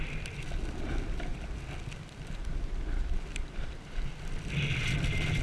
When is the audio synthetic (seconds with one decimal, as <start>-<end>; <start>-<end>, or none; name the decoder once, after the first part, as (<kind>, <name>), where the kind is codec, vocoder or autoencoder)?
none